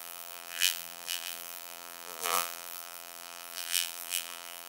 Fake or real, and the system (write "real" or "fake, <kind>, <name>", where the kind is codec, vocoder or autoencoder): fake, vocoder, BigVGAN v2